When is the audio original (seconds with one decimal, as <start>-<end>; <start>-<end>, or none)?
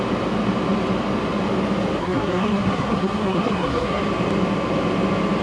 0.0-2.0; 4.0-5.4